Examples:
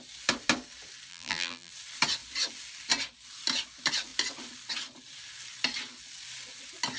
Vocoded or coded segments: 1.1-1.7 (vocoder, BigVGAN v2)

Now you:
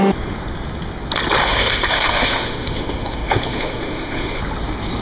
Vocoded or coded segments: 1.4-4.4 (autoencoder, DAC-VAE)

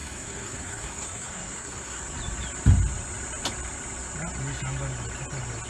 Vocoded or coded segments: 0.0-2.0 (codec, SNAC)

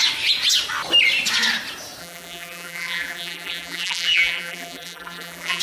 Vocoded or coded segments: 2.0-5.6 (vocoder, BigVGAN v2)

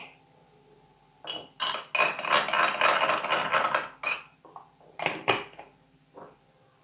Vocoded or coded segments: none

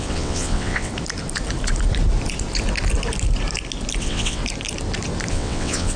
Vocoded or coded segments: 0.0-0.9 (vocoder, WaveNeXt); 4.0-4.4; 5.3-6.0